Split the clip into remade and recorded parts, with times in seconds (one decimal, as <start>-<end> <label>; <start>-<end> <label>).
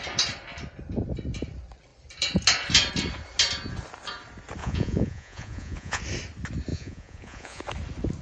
0.0-4.6 recorded; 4.6-6.0 remade; 6.0-6.7 recorded; 6.7-7.6 remade; 7.6-8.2 recorded